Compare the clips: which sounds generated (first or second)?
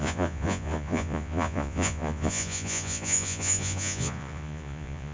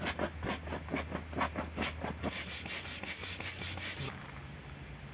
first